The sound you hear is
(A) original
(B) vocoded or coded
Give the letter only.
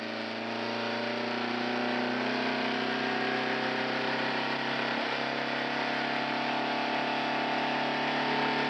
A